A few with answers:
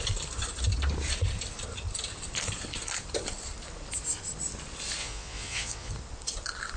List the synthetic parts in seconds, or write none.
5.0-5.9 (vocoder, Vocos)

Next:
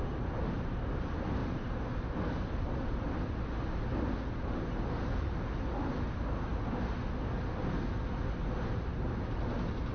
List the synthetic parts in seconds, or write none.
1.4-3.0 (vocoder, BigVGAN v2)